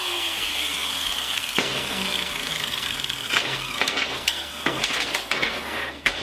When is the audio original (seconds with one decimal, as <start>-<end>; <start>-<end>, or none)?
none